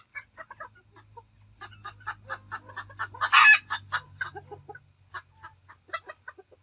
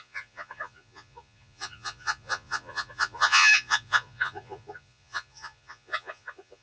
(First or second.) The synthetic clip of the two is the second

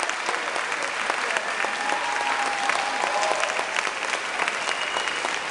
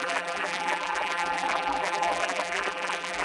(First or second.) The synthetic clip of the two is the second